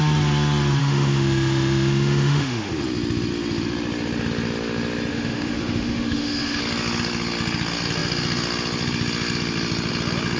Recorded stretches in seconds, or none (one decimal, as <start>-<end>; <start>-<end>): 0.0-0.8; 2.7-5.1; 6.6-10.4